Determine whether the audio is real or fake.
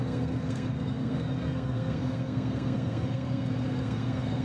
fake